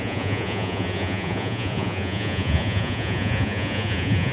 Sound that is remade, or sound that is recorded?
remade